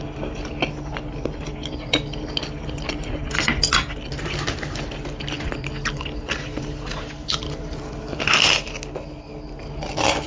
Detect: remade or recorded recorded